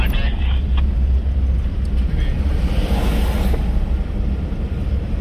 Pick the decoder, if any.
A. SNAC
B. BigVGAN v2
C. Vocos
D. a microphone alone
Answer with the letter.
D